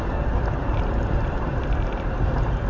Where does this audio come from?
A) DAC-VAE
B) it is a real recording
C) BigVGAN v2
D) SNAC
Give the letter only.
C